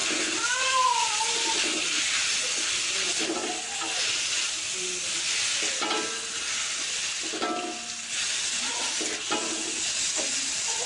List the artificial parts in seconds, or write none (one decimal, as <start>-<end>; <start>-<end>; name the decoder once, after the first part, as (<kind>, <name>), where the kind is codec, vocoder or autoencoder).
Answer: 0.0-1.1 (vocoder, BigVGAN v2)